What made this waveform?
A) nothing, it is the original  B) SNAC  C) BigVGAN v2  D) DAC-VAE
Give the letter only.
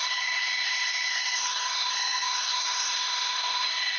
B